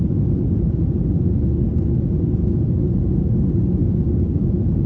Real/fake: real